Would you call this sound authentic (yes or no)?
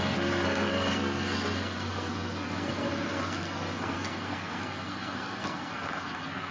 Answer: no